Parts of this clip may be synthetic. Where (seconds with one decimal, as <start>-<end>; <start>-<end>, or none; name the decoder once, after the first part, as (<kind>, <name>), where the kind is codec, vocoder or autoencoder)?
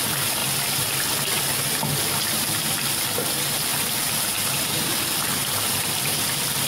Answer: 0.4-2.6 (vocoder, BigVGAN v2)